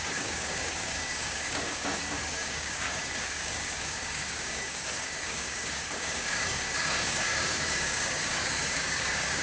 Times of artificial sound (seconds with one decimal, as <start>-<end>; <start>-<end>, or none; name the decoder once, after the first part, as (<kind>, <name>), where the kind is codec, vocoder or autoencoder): 0.0-9.4 (codec, DAC)